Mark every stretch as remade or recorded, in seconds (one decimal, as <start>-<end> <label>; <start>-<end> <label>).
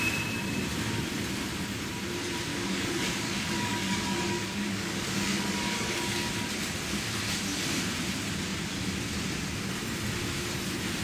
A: 0.0-2.5 recorded; 2.5-6.3 remade; 6.3-11.0 recorded